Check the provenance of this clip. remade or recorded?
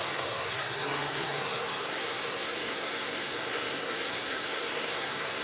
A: remade